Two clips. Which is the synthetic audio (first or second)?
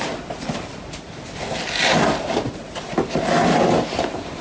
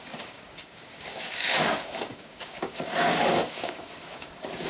second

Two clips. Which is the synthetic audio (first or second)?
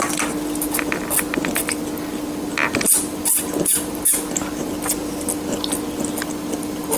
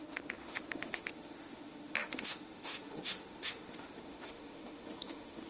second